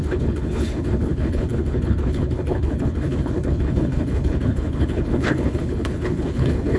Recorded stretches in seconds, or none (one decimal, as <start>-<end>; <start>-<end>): none